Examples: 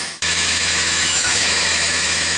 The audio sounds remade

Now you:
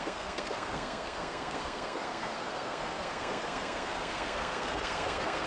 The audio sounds remade